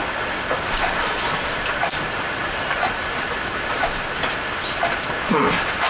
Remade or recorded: recorded